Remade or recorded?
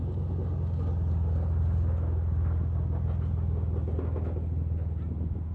recorded